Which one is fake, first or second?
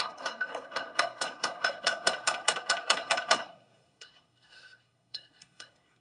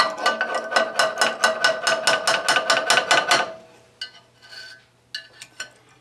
first